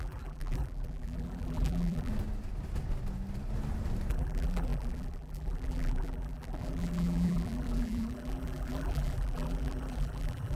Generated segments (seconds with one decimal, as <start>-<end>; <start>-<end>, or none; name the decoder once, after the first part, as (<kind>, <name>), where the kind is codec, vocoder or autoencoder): 0.0-2.1 (vocoder, BigVGAN v2); 4.1-10.6